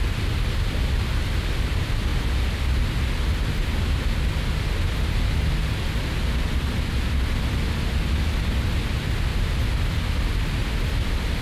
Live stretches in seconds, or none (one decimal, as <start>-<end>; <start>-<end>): 0.0-9.3; 10.5-11.4